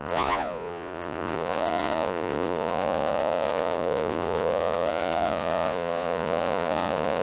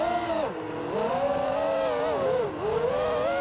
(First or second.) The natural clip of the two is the second